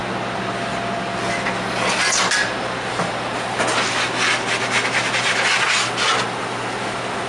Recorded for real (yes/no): yes